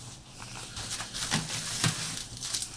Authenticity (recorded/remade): recorded